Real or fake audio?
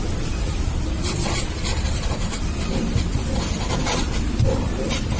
fake